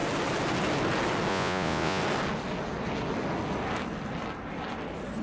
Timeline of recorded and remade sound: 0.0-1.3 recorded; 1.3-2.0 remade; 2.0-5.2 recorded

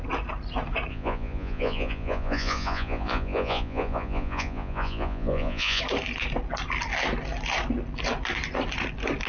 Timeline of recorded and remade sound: 0.0-0.9 recorded; 0.9-5.8 remade; 5.8-9.3 recorded

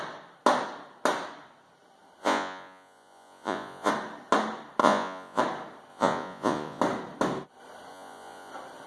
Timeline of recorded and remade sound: 0.0-2.2 recorded; 2.2-3.9 remade; 3.9-4.8 recorded; 4.8-5.4 remade; 5.4-5.9 recorded; 5.9-6.8 remade; 6.8-7.9 recorded; 7.9-8.5 remade; 8.5-8.9 recorded